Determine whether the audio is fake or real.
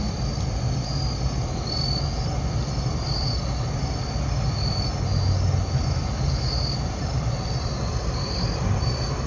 real